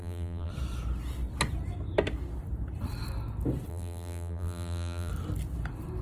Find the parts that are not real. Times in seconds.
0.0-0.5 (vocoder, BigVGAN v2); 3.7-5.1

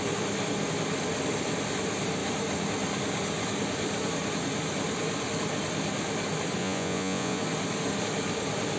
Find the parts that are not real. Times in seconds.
6.6-7.4 (vocoder, Vocos)